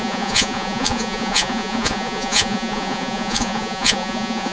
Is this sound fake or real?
fake